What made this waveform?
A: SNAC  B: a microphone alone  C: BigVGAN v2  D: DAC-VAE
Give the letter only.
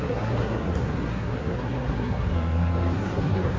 A